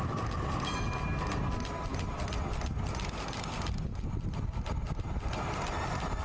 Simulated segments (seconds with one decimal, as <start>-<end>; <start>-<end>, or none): none